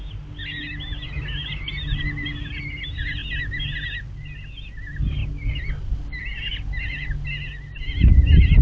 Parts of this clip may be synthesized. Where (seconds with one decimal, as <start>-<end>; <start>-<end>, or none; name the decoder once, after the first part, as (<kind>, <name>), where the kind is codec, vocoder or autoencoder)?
none